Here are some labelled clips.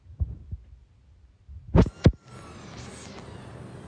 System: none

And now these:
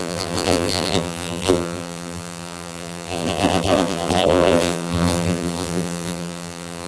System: vocoder, BigVGAN v2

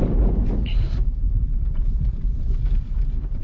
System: vocoder, BigVGAN v2